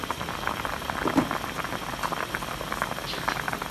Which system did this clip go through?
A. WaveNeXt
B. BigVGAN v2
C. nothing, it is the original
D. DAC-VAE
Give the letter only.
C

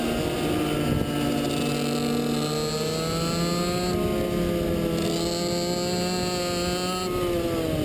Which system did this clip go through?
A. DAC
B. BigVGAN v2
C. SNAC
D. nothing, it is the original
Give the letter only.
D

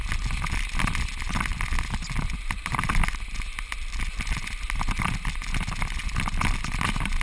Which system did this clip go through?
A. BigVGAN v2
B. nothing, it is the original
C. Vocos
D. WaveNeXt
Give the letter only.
B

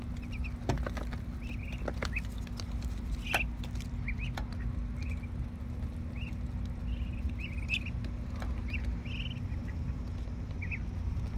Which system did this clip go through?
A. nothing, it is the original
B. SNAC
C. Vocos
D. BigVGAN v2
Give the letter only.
A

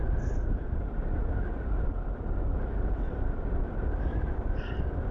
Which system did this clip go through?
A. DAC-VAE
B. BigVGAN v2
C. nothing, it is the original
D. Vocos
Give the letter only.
B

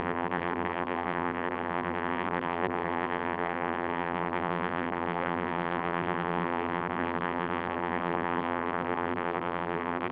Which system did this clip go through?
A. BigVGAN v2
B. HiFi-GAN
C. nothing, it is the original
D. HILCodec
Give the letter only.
A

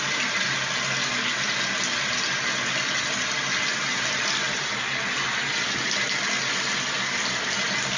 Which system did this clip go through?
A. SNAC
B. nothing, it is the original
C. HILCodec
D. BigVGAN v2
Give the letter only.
B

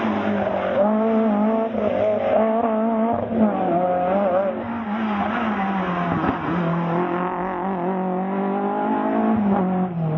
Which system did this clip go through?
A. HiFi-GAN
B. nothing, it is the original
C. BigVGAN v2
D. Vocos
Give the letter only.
B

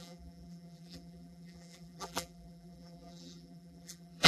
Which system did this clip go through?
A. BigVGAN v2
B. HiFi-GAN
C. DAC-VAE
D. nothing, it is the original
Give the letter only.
A